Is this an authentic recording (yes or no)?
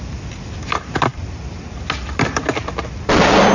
yes